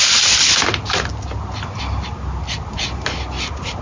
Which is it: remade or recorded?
recorded